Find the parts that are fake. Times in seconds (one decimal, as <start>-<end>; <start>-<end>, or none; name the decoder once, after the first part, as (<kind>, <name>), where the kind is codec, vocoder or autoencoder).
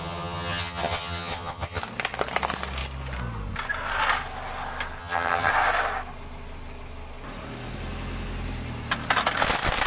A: 0.0-1.8 (vocoder, HiFi-GAN); 5.0-5.5